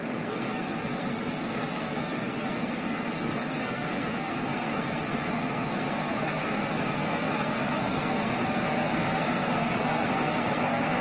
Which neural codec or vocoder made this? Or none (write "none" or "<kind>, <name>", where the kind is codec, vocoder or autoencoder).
codec, SNAC